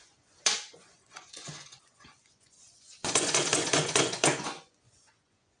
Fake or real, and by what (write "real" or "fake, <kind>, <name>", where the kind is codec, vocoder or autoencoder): fake, vocoder, Vocos